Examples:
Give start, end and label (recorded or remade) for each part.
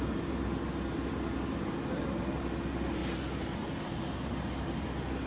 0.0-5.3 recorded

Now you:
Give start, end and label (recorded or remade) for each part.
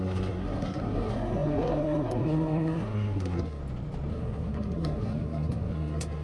0.0-3.6 remade; 3.6-4.1 recorded; 4.1-6.2 remade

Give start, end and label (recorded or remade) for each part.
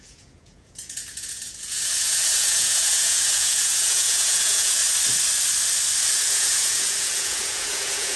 0.0-4.8 remade; 4.8-6.1 recorded; 6.1-8.2 remade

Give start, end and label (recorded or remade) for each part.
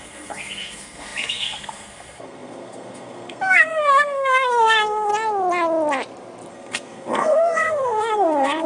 0.0-5.1 remade; 5.1-6.5 recorded; 6.5-8.7 remade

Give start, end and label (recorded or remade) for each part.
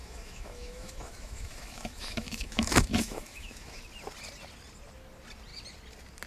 0.0-3.8 remade; 3.8-6.3 recorded